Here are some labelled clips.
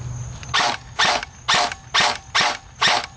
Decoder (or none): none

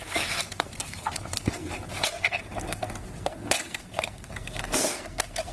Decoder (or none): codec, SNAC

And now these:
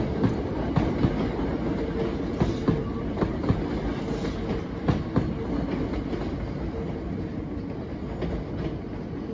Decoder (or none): none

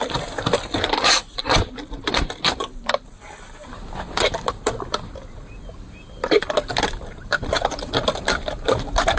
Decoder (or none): vocoder, BigVGAN v2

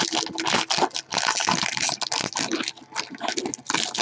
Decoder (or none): none